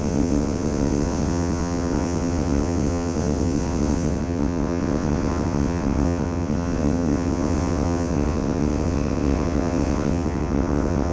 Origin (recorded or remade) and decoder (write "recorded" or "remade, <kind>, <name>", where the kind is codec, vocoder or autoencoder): remade, vocoder, WaveNeXt